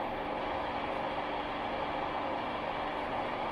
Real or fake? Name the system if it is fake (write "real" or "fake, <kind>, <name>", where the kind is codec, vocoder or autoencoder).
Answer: real